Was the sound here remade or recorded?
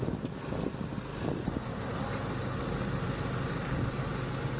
recorded